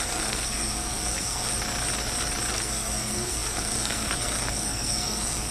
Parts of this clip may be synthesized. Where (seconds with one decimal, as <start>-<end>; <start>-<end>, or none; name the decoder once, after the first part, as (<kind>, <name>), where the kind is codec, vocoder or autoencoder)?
0.0-1.5 (codec, SNAC); 2.5-5.5